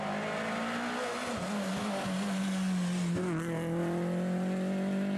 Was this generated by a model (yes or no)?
no